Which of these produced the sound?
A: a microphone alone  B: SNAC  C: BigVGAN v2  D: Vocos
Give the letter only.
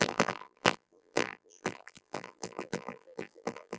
C